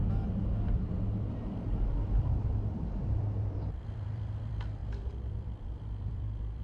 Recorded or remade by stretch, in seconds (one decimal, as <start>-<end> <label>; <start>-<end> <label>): 0.0-6.6 remade